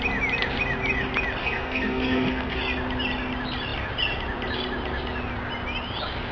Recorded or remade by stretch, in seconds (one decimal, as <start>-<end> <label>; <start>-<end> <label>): 0.0-1.4 recorded; 1.4-2.6 remade; 2.6-6.3 recorded